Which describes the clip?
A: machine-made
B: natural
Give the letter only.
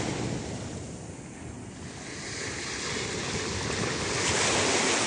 B